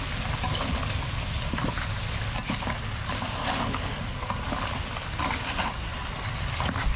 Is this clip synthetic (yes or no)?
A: no